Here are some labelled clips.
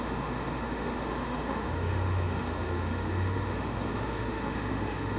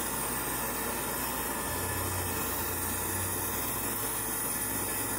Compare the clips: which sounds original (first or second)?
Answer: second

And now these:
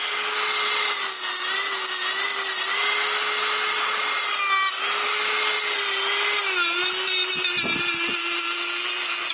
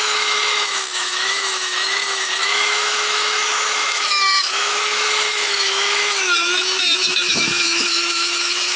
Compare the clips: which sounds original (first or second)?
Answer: first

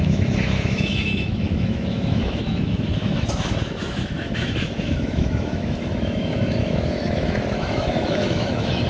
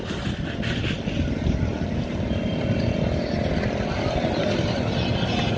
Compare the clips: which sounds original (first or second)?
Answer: second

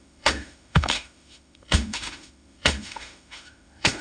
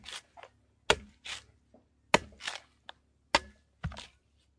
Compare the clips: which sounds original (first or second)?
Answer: second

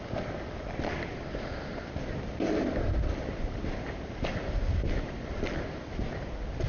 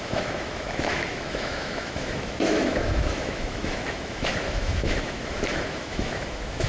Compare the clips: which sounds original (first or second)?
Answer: first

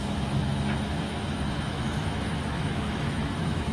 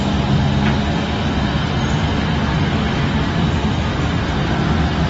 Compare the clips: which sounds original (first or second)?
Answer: second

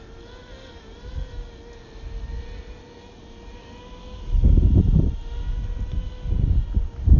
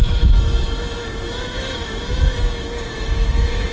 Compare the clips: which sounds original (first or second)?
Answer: first